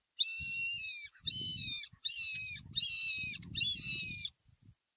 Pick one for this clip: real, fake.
real